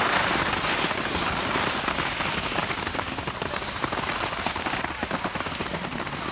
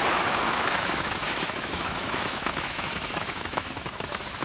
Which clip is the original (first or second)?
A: first